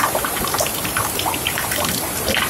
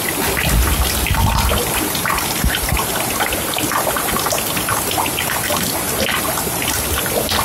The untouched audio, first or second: second